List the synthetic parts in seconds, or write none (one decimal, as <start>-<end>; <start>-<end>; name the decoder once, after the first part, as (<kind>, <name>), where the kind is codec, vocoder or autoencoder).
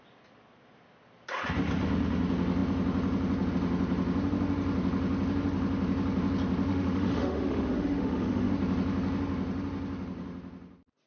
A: 6.7-8.5 (autoencoder, DAC-VAE)